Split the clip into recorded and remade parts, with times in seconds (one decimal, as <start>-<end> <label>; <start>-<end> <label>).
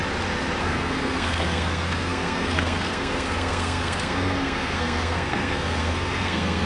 0.0-0.6 recorded; 0.6-6.7 remade